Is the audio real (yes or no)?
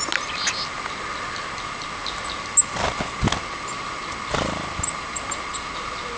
yes